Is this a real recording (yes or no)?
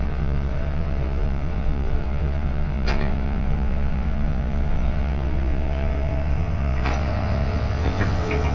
no